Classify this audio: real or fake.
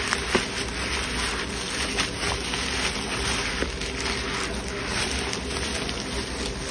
real